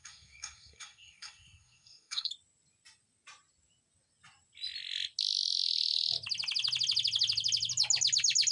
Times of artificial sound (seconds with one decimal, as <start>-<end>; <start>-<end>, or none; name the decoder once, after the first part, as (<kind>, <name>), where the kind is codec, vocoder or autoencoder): 0.0-2.3 (codec, SNAC)